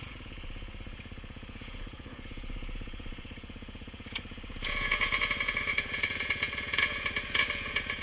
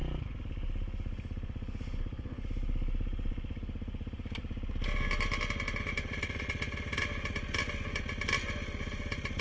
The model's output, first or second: first